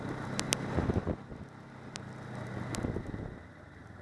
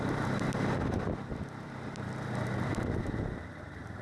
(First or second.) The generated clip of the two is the second